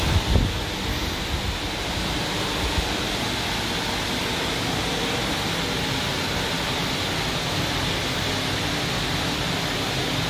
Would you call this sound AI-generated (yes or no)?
no